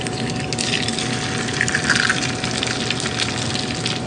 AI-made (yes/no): yes